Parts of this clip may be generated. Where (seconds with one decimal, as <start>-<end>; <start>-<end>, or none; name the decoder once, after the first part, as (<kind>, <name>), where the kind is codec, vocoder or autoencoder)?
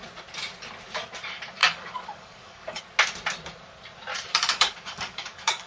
1.6-2.8 (codec, DAC); 4.3-5.7